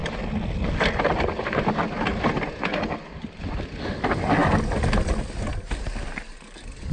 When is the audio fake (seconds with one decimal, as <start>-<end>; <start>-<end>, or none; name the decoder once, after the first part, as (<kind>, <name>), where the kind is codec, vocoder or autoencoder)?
none

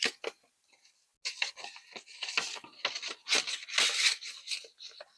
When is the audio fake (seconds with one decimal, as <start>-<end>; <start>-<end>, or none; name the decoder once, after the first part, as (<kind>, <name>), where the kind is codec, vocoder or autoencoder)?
none

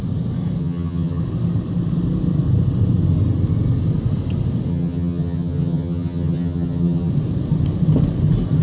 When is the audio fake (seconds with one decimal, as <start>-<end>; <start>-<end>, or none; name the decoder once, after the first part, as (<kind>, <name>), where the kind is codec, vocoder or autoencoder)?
0.6-1.2 (vocoder, HiFi-GAN); 4.7-7.1

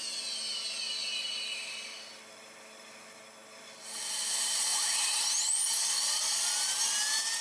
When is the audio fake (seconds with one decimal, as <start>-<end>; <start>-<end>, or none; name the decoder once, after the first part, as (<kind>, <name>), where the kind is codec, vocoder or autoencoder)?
none

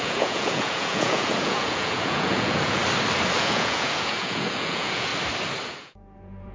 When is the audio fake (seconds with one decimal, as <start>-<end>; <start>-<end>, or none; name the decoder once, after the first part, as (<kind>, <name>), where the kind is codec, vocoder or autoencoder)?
0.0-2.8 (vocoder, Vocos); 3.4-5.1; 5.7-6.5

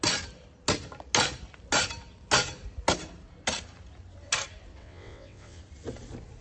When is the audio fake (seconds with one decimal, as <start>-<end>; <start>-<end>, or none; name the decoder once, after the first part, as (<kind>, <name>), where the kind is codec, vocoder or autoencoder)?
4.8-5.6 (vocoder, WaveNeXt)

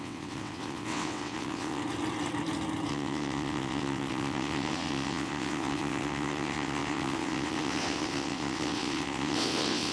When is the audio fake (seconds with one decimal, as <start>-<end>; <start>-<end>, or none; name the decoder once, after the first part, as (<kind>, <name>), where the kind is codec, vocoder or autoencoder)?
0.0-1.8 (vocoder, WaveNeXt); 2.9-9.9